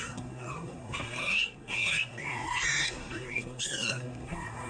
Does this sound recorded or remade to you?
remade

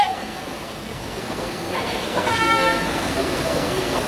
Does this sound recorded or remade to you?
remade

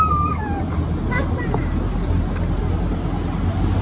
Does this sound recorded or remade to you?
recorded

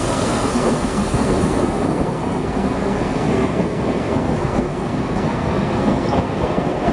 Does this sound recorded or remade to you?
remade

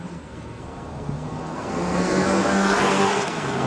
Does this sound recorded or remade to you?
remade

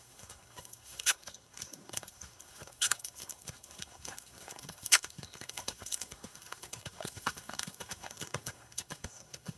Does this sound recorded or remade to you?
remade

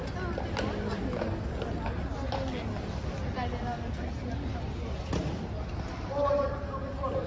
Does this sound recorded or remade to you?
recorded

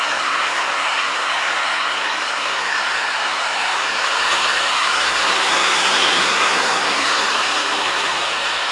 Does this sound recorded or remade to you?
remade